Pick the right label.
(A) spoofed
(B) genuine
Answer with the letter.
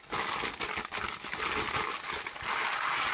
B